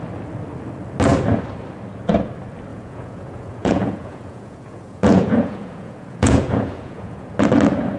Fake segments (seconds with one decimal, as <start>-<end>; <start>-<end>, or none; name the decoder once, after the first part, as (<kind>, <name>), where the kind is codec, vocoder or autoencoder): 2.7-7.4 (vocoder, Vocos)